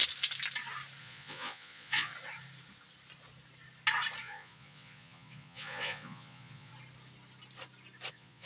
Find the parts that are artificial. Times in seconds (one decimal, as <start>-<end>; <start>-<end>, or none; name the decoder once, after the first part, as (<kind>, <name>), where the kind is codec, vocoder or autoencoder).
1.0-2.1 (vocoder, Vocos); 4.2-6.7; 8.1-8.5

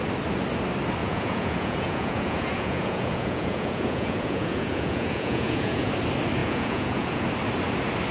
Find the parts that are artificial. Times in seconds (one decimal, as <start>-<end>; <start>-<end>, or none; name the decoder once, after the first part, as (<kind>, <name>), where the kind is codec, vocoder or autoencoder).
1.0-5.9 (vocoder, Vocos); 6.4-7.2

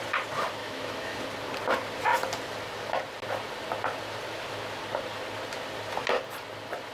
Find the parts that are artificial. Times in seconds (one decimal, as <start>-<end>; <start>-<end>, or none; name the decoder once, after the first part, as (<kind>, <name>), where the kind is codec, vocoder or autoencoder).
0.6-1.2 (autoencoder, DAC-VAE)